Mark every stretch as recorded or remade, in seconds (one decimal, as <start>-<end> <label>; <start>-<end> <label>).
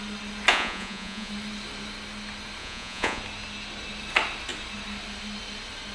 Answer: 0.0-0.5 recorded; 0.5-1.3 remade; 1.3-2.6 recorded; 2.6-3.2 remade; 3.2-5.9 recorded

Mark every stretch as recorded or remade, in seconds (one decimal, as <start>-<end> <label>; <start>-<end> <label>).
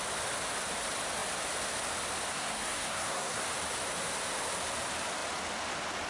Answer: 0.0-2.3 recorded; 2.3-3.4 remade; 3.4-6.1 recorded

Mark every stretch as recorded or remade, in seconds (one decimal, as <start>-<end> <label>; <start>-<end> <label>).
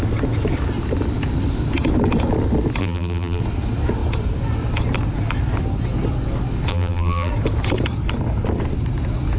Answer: 0.0-2.8 recorded; 2.8-3.4 remade; 3.4-6.7 recorded; 6.7-7.3 remade; 7.3-9.4 recorded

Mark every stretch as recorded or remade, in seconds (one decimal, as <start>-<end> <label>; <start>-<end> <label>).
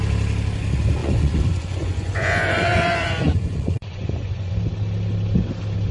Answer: 0.0-1.0 recorded; 1.0-4.5 remade; 4.5-5.9 recorded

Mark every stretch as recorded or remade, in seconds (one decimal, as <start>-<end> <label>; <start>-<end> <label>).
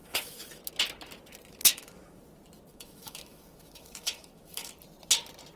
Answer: 0.0-0.6 remade; 0.6-1.6 recorded; 1.6-2.2 remade; 2.2-2.7 recorded; 2.7-4.7 remade; 4.7-5.6 recorded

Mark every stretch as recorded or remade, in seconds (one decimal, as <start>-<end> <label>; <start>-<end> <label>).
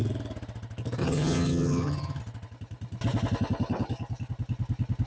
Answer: 0.0-1.0 recorded; 1.0-2.2 remade; 2.2-5.1 recorded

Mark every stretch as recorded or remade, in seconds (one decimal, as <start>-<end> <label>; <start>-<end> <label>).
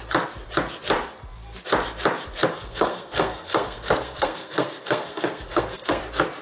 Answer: 0.0-2.5 recorded; 2.5-6.0 remade; 6.0-6.4 recorded